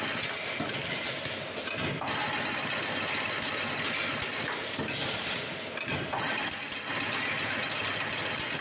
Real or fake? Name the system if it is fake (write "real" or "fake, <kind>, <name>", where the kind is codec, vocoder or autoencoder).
real